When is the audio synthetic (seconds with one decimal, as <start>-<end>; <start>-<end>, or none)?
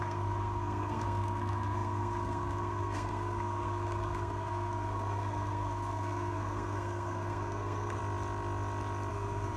0.0-8.0; 9.1-9.6